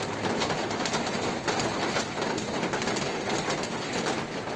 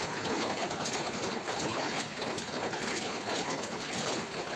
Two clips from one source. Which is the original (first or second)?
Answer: first